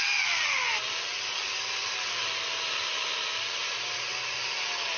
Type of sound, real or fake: real